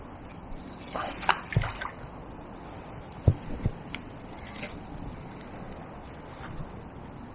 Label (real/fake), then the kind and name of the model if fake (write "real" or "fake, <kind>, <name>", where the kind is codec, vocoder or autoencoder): real